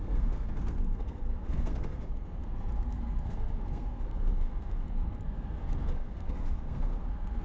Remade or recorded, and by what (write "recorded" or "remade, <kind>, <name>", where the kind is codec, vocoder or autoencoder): remade, codec, SNAC